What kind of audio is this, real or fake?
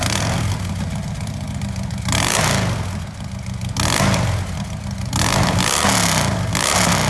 real